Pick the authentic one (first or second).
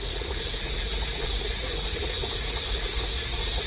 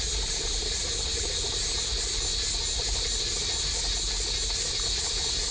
second